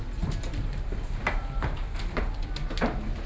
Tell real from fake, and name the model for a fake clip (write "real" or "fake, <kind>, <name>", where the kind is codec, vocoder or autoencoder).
real